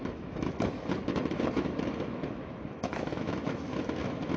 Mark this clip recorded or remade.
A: remade